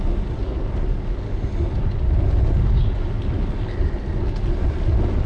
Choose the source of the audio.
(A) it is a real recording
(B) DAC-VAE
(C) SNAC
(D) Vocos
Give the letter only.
A